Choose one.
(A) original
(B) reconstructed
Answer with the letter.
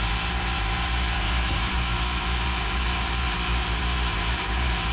B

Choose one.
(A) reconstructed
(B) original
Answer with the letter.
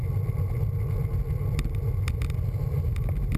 B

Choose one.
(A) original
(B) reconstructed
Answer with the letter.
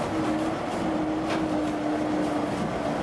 A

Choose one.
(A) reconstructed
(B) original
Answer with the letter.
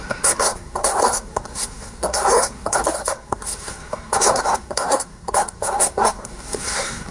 A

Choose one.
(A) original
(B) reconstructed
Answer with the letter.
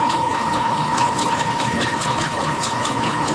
B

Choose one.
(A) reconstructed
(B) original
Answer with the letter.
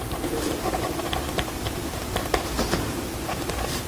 A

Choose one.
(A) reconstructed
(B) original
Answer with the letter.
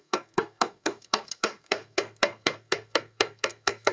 A